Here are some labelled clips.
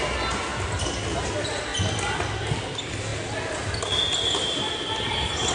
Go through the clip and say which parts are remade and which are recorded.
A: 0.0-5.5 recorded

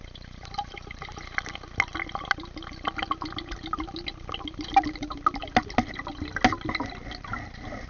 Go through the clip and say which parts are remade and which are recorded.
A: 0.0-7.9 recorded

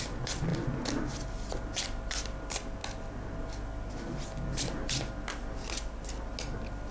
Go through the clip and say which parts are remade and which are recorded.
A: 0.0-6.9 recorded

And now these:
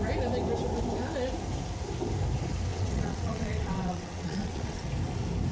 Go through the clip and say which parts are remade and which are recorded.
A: 0.0-2.7 recorded; 2.7-4.9 remade; 4.9-5.5 recorded

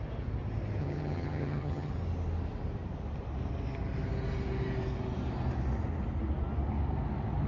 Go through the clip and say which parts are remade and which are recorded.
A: 0.0-0.8 recorded; 0.8-1.9 remade; 1.9-7.5 recorded

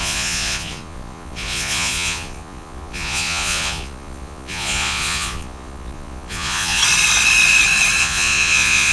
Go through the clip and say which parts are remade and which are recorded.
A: 0.0-6.8 remade; 6.8-8.0 recorded; 8.0-8.9 remade